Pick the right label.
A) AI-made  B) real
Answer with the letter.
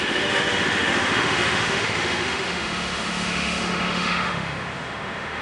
A